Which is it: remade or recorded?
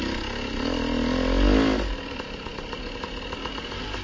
recorded